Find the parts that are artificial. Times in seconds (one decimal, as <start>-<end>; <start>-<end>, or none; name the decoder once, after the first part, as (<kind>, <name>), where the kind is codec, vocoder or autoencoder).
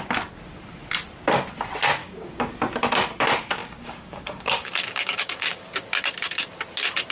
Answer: 2.0-2.5 (codec, DAC); 3.6-5.7